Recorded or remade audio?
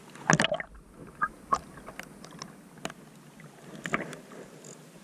recorded